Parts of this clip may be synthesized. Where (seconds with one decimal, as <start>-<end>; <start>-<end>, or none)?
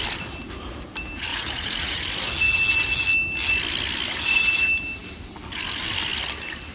1.3-2.0